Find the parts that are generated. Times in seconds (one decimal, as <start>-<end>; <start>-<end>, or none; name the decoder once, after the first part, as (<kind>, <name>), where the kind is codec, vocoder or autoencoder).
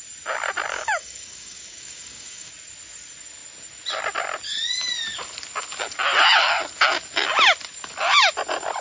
0.7-2.5 (codec, DAC)